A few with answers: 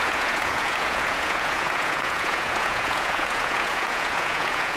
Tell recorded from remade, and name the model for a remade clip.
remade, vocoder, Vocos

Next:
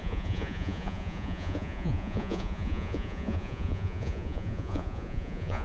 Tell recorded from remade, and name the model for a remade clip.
remade, vocoder, Vocos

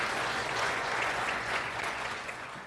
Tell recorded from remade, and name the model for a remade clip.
remade, vocoder, Vocos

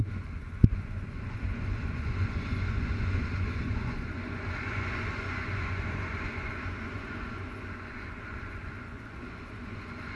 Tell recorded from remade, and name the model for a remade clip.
remade, vocoder, Vocos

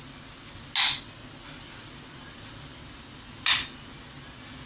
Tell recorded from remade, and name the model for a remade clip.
recorded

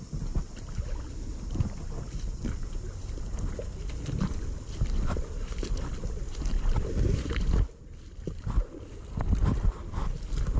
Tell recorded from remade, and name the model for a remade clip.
recorded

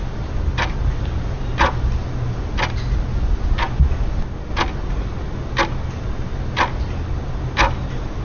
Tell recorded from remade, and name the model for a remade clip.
recorded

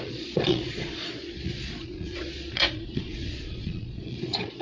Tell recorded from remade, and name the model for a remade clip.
remade, vocoder, Vocos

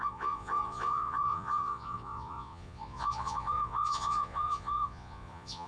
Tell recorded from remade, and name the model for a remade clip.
remade, vocoder, Vocos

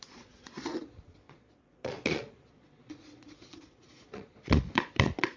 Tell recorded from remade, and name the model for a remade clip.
remade, vocoder, Vocos